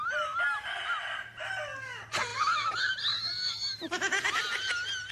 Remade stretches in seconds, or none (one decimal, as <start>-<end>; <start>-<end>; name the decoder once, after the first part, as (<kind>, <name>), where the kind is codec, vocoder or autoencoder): none